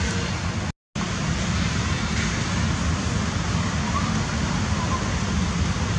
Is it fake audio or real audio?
real